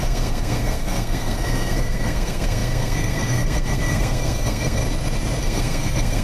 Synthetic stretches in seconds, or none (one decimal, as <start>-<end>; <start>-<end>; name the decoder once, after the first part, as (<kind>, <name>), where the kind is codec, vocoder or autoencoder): 0.0-4.8 (codec, SNAC); 5.4-6.2